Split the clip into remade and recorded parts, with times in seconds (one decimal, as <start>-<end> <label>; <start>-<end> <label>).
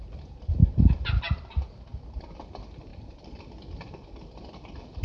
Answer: 0.0-5.0 recorded